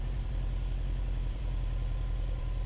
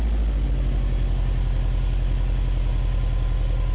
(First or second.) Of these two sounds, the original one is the second